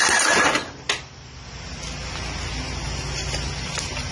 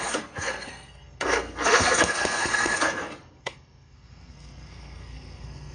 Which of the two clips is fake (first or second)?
second